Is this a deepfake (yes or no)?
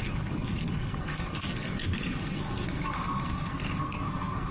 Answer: yes